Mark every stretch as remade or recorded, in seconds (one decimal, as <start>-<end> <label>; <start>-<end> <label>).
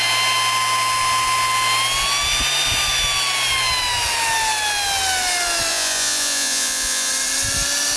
0.0-5.7 recorded; 5.7-7.1 remade; 7.1-8.0 recorded